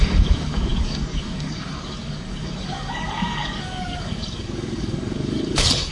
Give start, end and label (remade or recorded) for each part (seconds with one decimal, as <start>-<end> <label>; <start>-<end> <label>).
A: 0.0-5.9 remade